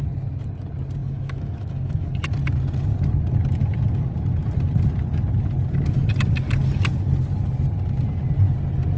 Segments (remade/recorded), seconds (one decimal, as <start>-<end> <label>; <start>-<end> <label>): 0.0-1.0 recorded; 1.0-2.1 remade; 2.1-9.0 recorded